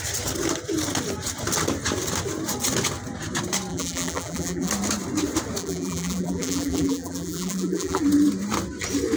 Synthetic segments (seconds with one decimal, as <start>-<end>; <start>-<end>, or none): 3.7-4.7; 5.6-8.0